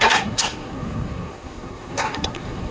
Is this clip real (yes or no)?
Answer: no